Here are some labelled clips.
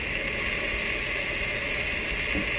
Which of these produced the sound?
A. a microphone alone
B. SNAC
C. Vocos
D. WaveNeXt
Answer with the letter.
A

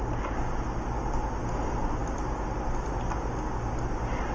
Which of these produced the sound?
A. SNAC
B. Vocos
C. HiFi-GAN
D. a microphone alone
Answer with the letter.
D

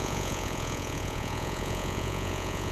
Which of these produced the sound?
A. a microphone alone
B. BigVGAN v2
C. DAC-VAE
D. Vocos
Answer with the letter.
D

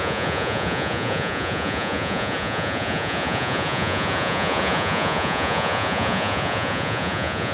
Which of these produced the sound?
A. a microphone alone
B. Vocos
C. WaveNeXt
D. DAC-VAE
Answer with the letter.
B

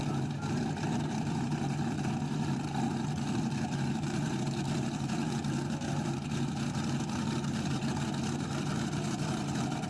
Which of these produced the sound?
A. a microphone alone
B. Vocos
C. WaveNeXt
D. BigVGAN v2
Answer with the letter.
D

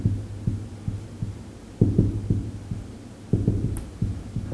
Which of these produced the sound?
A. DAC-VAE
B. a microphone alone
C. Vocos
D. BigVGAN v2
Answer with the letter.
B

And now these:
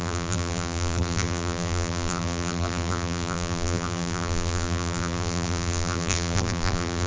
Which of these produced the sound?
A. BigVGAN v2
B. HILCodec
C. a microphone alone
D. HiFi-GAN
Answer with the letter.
A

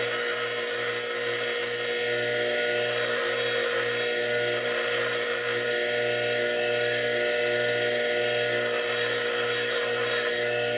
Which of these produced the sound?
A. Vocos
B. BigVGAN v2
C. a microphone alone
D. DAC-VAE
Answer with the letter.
C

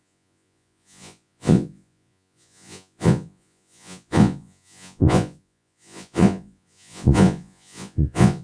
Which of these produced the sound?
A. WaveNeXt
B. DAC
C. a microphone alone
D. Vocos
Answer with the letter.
D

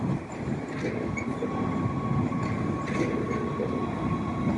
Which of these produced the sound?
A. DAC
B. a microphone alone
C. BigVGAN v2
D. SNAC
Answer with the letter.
B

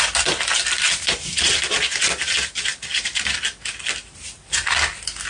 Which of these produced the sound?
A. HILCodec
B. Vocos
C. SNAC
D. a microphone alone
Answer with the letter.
D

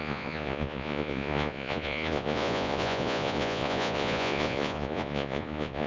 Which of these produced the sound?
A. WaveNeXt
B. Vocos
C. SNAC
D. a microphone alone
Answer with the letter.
B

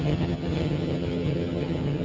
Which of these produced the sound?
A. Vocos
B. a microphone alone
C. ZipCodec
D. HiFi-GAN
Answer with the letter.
D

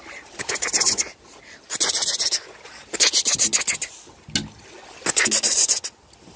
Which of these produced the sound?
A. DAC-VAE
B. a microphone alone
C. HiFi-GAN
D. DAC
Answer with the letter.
B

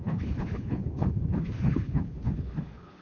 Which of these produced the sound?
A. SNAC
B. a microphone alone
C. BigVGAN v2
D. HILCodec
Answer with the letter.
D